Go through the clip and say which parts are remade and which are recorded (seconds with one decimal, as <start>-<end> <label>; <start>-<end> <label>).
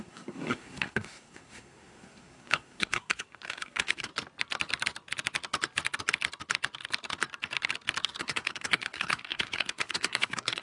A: 0.0-4.1 remade; 4.1-8.2 recorded; 8.2-10.6 remade